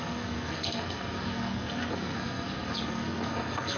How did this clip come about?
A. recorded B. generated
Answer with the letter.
B